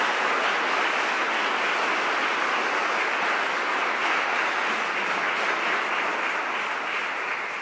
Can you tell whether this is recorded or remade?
recorded